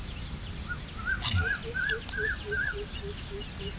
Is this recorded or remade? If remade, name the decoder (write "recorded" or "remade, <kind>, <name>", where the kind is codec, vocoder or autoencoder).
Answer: recorded